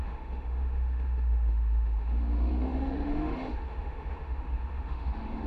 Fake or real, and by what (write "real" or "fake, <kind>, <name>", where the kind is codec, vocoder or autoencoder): fake, autoencoder, DAC-VAE